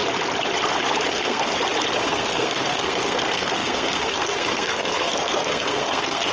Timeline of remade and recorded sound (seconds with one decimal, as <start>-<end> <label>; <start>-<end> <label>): 0.0-1.1 recorded; 1.1-1.5 remade; 1.5-2.0 recorded; 2.0-6.3 remade